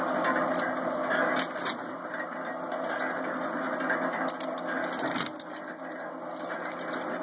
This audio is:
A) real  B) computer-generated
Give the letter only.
A